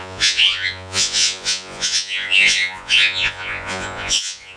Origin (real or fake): fake